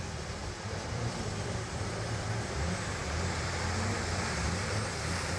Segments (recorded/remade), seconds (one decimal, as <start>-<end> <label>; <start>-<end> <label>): 0.0-0.4 recorded; 0.4-2.3 remade; 2.3-5.4 recorded